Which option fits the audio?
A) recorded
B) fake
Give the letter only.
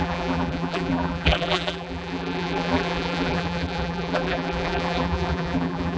B